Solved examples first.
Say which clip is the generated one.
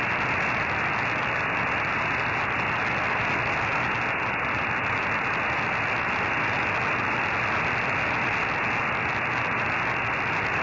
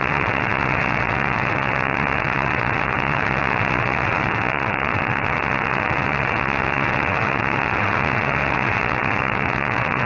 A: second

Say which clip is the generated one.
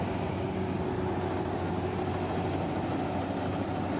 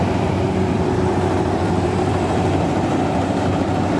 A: second